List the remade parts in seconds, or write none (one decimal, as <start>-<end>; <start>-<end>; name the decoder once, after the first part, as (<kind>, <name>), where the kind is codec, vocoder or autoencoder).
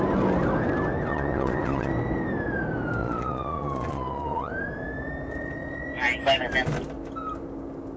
1.1-1.9 (vocoder, Vocos); 3.0-4.5